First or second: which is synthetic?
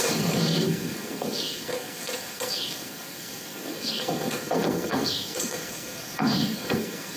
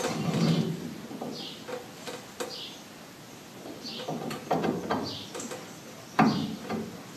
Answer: first